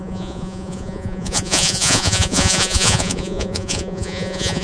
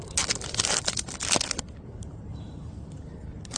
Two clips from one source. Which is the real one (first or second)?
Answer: second